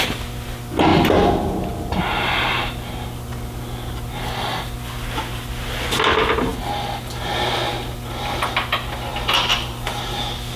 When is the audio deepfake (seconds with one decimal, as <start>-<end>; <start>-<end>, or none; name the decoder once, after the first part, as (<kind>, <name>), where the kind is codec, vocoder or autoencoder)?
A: none